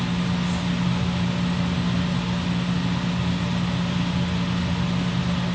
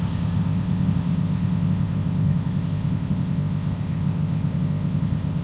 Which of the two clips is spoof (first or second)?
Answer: second